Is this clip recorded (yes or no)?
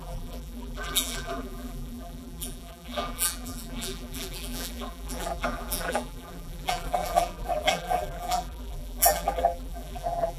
no